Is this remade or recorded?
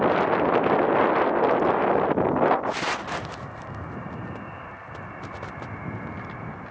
recorded